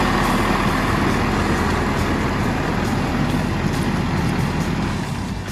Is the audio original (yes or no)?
yes